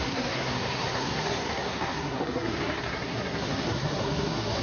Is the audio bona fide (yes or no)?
no